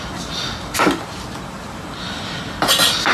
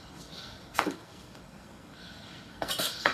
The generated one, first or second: second